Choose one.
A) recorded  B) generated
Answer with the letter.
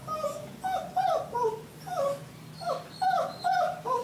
A